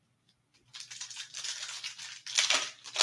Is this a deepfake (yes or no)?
no